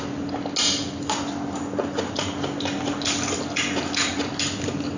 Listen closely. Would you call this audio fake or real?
real